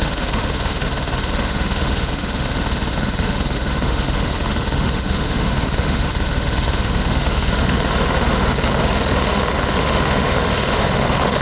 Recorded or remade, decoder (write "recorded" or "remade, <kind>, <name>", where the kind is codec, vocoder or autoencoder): remade, autoencoder, DAC-VAE